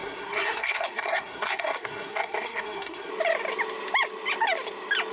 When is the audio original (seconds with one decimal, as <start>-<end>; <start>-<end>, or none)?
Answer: 3.1-5.1